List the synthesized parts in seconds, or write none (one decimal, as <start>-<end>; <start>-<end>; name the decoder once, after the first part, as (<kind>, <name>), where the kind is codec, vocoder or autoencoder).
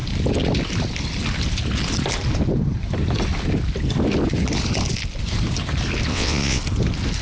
6.1-6.6 (vocoder, WaveNeXt)